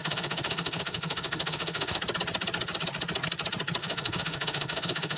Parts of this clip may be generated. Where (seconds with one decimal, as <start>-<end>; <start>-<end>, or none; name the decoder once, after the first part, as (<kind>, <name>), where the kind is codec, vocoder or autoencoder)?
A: 0.0-2.0 (autoencoder, DAC-VAE); 3.8-5.2